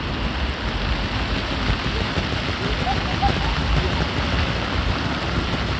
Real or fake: real